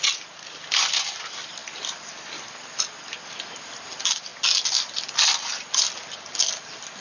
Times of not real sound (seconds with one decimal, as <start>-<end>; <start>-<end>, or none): none